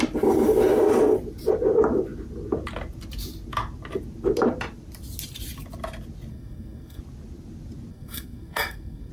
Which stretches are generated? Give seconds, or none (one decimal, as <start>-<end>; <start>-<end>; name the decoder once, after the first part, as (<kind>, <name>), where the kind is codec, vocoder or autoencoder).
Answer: 6.3-7.0 (codec, SNAC); 7.9-9.1